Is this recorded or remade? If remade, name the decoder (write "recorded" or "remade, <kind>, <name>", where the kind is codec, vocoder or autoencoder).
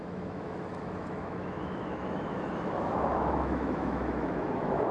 remade, autoencoder, DAC-VAE